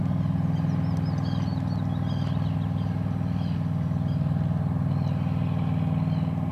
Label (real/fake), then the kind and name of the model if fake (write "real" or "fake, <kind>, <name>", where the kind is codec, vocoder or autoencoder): real